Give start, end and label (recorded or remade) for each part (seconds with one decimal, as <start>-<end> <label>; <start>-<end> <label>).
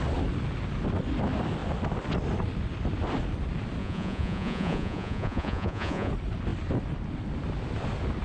0.0-3.8 recorded; 3.8-6.1 remade; 6.1-8.2 recorded